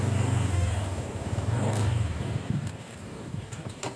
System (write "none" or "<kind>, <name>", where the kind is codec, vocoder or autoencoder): codec, DAC